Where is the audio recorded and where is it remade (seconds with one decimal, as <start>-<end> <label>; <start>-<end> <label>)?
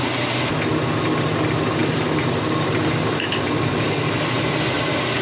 0.0-1.8 recorded; 1.8-4.4 remade; 4.4-5.2 recorded